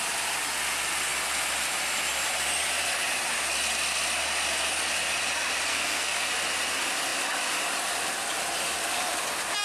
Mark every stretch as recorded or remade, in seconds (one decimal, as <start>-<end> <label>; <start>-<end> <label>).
0.0-5.7 recorded; 5.7-6.3 remade; 6.3-9.6 recorded